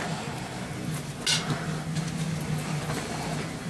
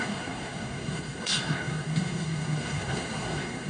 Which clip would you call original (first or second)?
first